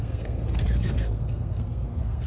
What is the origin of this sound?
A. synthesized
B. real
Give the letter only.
A